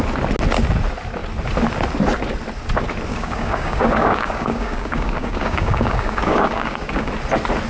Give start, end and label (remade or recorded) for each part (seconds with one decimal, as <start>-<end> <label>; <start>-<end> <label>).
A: 0.0-3.1 recorded; 3.1-7.1 remade; 7.1-7.7 recorded